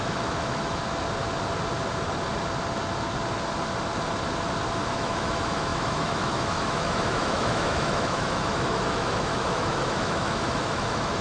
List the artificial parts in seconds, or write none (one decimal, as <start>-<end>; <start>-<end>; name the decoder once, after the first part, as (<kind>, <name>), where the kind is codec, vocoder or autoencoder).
0.0-0.8 (autoencoder, DAC-VAE); 4.9-11.2